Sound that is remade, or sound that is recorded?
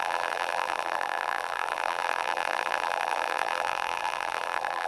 remade